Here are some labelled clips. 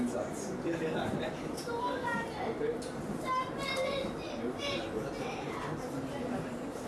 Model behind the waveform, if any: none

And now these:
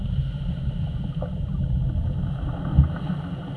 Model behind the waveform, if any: none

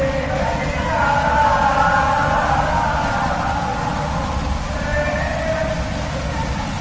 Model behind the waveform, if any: none